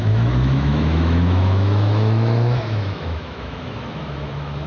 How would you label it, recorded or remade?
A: remade